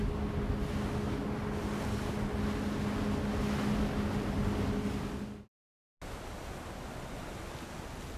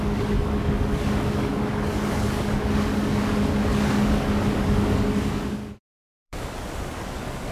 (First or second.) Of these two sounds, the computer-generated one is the second